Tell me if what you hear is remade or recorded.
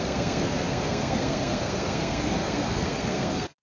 remade